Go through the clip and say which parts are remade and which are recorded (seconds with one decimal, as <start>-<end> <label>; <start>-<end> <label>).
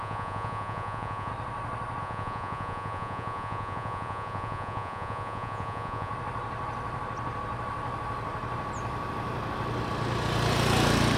0.0-1.3 remade; 1.3-2.0 recorded; 2.0-6.1 remade; 6.1-11.2 recorded